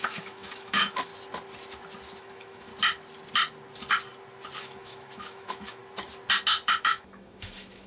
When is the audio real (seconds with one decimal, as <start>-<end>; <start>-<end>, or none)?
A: 1.1-2.2; 2.7-4.6; 5.8-6.8